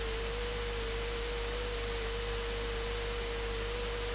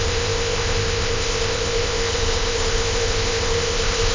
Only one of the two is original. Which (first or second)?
first